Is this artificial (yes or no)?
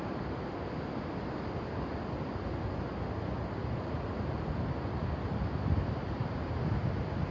no